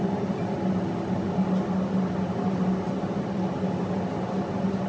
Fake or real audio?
real